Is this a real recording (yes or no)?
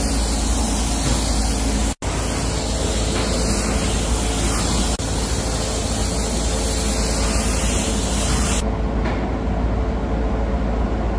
yes